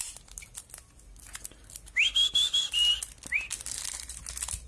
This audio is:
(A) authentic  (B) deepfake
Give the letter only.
A